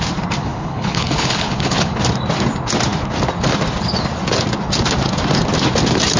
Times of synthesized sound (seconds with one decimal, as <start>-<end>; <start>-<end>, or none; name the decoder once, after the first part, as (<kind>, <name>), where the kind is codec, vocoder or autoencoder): 0.4-2.0 (codec, HILCodec)